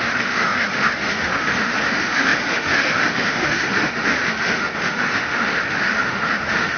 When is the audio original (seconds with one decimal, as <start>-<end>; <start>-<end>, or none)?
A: none